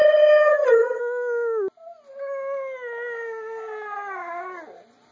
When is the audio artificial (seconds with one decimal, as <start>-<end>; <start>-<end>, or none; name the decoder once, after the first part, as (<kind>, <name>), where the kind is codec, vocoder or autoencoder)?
0.0-1.0 (vocoder, HiFi-GAN)